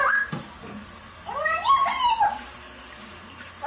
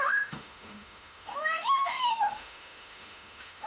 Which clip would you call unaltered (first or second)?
first